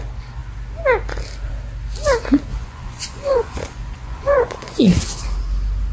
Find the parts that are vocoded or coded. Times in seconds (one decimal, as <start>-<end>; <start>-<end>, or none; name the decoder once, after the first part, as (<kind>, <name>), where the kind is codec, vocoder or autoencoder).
2.5-4.8 (vocoder, Vocos)